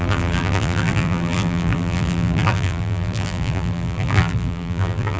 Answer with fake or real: fake